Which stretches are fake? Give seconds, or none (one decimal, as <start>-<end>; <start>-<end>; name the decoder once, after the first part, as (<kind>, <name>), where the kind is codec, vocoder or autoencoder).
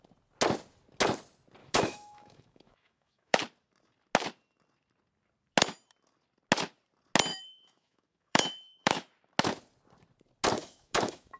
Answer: 1.6-3.4 (autoencoder, DAC-VAE); 7.3-9.1; 10.6-11.4